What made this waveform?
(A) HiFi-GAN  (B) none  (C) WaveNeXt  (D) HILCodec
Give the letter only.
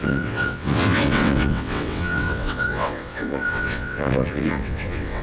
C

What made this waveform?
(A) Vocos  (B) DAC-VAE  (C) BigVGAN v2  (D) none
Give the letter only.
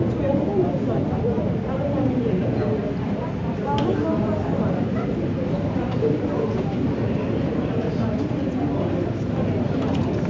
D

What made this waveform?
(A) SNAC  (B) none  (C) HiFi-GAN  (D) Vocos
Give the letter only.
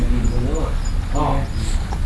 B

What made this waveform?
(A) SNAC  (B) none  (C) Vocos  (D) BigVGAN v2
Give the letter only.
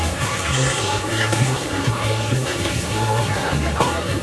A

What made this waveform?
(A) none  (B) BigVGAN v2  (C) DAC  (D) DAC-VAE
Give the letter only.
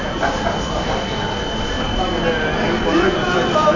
A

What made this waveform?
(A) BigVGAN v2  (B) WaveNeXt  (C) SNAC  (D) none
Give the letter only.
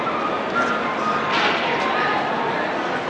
D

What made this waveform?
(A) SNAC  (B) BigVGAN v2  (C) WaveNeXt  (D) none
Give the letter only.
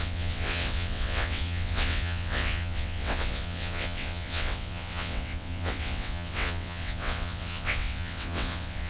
C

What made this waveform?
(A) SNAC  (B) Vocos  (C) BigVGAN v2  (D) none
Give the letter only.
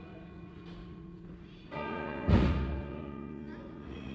B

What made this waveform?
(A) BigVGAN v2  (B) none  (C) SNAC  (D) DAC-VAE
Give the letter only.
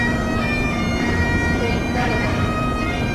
A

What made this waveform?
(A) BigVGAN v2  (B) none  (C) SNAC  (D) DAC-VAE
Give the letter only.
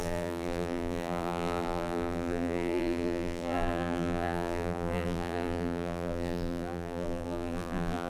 A